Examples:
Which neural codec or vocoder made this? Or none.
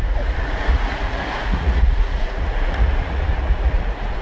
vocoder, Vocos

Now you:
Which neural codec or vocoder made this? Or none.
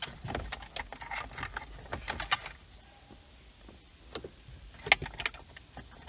none